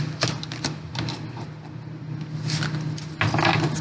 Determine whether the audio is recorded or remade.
recorded